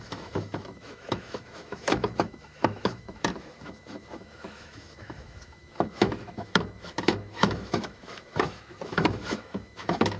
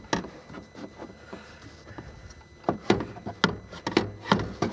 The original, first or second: second